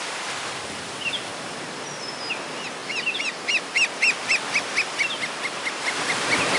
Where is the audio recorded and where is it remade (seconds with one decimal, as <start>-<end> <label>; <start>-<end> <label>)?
0.0-6.6 recorded